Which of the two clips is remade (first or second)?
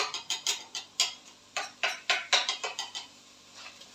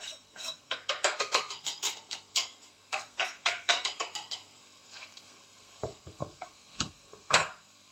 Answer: second